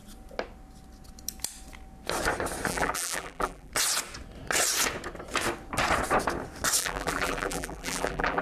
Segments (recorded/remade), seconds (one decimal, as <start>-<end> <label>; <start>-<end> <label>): 0.0-2.7 recorded; 2.7-3.7 remade; 3.7-6.8 recorded; 6.8-8.4 remade